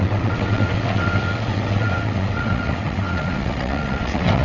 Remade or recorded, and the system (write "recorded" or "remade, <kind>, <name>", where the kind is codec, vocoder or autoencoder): remade, vocoder, WaveNeXt